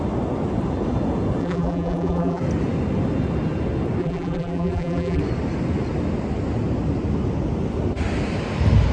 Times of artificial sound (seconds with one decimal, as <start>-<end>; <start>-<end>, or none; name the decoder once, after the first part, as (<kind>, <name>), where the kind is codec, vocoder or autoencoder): 1.4-2.4 (vocoder, BigVGAN v2); 4.0-5.2